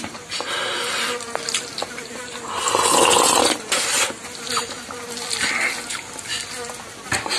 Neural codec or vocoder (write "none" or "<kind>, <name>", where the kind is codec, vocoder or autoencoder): none